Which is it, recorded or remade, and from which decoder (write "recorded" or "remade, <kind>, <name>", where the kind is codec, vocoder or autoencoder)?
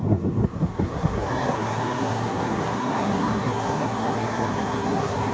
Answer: remade, codec, SNAC